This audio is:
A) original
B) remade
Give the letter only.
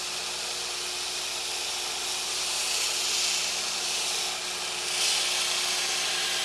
A